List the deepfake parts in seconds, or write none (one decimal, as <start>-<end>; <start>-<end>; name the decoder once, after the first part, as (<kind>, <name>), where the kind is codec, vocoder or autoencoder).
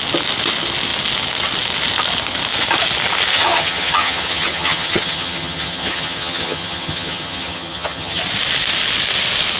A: 3.3-8.2 (vocoder, HiFi-GAN)